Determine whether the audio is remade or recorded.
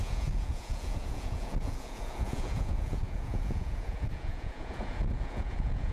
remade